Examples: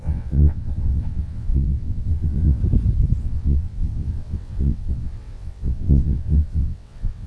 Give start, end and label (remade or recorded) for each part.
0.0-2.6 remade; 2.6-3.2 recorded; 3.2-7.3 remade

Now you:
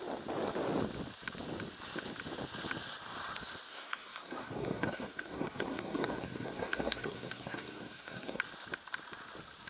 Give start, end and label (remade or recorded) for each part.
0.0-3.7 recorded; 3.7-8.4 remade; 8.4-9.7 recorded

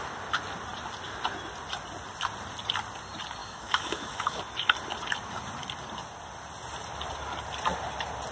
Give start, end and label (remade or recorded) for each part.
0.0-3.4 recorded; 3.4-4.4 remade; 4.4-8.3 recorded